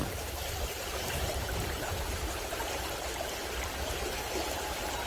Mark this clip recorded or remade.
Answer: remade